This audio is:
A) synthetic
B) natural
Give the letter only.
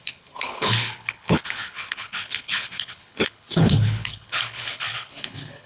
A